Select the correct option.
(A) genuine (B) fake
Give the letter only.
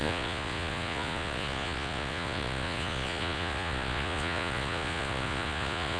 B